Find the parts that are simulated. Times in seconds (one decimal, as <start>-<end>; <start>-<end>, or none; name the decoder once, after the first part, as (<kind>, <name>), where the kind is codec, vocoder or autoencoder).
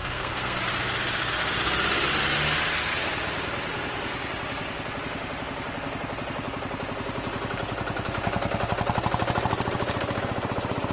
0.0-0.6 (codec, SNAC)